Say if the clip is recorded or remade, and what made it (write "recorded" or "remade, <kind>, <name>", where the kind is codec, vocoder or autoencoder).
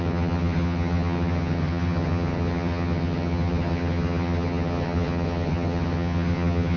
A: remade, vocoder, HiFi-GAN